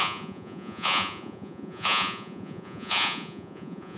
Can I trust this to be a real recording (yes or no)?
no